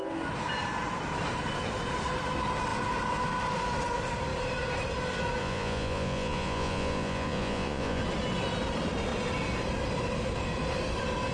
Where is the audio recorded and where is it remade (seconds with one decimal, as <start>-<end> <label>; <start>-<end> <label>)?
0.0-5.4 recorded; 5.4-8.0 remade; 8.0-11.3 recorded